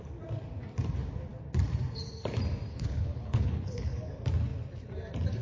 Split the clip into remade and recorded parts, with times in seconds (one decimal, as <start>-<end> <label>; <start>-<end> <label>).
0.0-2.7 recorded; 2.7-4.1 remade; 4.1-5.4 recorded